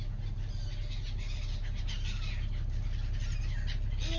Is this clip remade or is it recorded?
recorded